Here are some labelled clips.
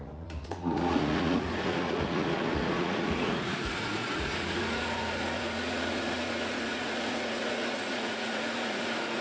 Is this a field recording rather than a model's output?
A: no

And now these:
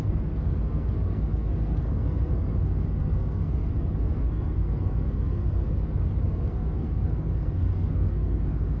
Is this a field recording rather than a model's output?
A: no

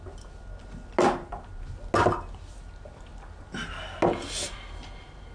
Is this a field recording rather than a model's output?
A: yes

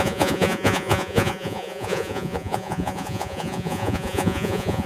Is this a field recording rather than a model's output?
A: no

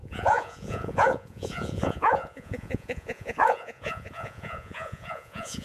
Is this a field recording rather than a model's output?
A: no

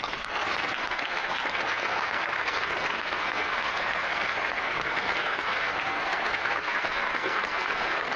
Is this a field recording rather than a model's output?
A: no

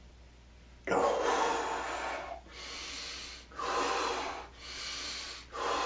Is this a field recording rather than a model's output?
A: yes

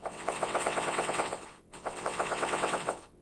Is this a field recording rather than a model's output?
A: no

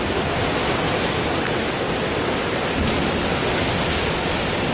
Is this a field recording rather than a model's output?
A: yes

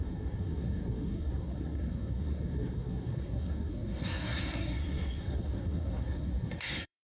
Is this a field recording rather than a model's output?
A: no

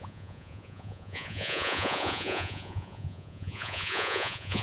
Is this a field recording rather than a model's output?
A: no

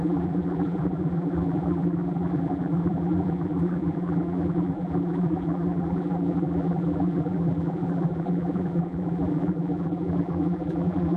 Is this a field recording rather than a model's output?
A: no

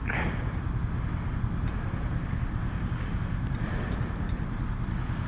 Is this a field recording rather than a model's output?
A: yes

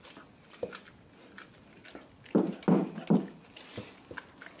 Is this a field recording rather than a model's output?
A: yes